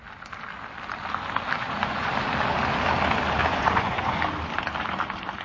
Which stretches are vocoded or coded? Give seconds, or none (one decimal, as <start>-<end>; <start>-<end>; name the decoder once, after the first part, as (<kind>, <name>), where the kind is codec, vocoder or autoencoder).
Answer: 1.6-2.1 (vocoder, Vocos); 3.4-4.2